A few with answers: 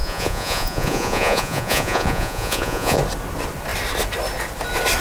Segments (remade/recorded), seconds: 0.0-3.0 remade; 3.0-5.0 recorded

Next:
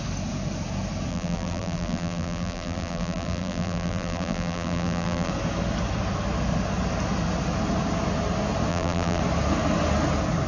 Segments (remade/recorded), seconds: 0.0-1.1 recorded; 1.1-5.3 remade; 5.3-8.7 recorded; 8.7-9.2 remade; 9.2-10.5 recorded

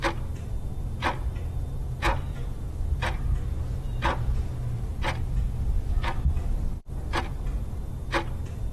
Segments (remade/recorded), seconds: 0.0-4.9 recorded; 4.9-7.6 remade; 7.6-8.7 recorded

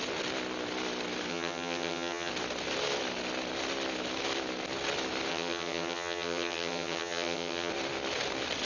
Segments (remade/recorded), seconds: 0.0-1.3 recorded; 1.3-2.3 remade; 2.3-5.3 recorded; 5.3-7.7 remade; 7.7-8.7 recorded

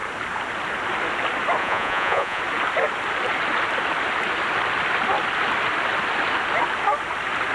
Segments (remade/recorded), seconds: 0.0-1.6 recorded; 1.6-2.4 remade; 2.4-7.5 recorded

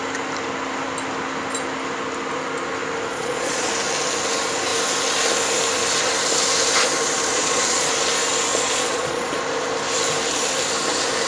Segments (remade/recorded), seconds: 0.0-3.1 recorded; 3.1-3.7 remade; 3.7-7.3 recorded; 7.3-7.9 remade; 7.9-8.5 recorded; 8.5-9.4 remade; 9.4-11.3 recorded

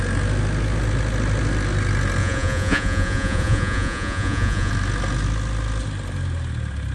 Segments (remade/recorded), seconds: 0.0-2.2 recorded; 2.2-4.7 remade; 4.7-6.9 recorded